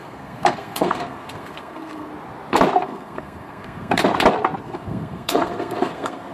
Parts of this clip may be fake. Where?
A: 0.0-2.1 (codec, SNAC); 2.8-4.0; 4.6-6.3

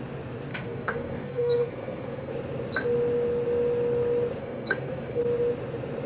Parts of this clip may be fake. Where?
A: 0.5-2.3 (codec, SNAC); 4.4-5.2

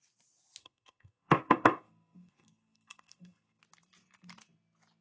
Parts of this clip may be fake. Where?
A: 0.6-3.6 (codec, SNAC)

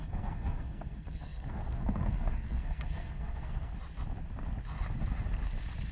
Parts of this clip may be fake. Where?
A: 0.0-3.7 (codec, SNAC)

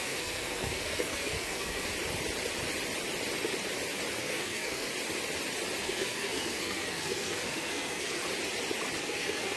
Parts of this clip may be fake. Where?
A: 0.0-1.9 (codec, SNAC); 4.2-4.9; 5.8-8.2; 9.0-9.6

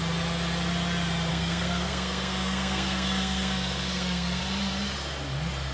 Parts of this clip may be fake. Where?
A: 1.3-4.4 (codec, SNAC)

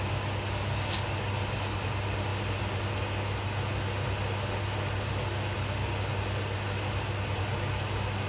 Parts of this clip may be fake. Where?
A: none

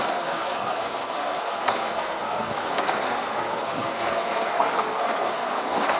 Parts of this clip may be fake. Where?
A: 0.0-6.0 (codec, SNAC)